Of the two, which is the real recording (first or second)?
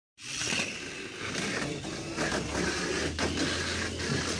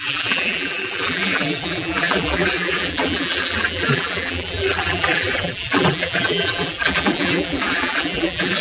first